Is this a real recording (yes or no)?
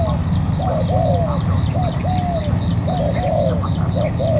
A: yes